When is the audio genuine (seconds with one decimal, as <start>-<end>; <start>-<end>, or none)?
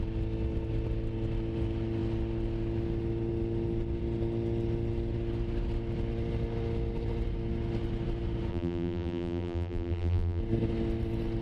0.0-8.5; 10.4-11.4